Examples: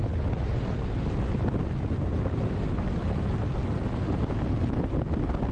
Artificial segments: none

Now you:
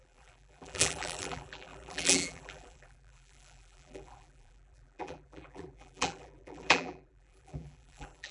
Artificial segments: 0.0-8.3 (vocoder, BigVGAN v2)